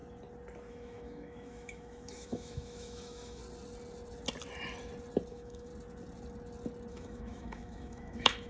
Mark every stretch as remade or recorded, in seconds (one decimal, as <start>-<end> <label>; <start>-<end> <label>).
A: 0.0-0.7 recorded; 0.7-3.4 remade; 3.4-5.3 recorded; 5.3-5.7 remade; 5.7-6.9 recorded; 6.9-8.5 remade